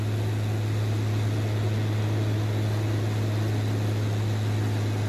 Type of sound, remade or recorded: recorded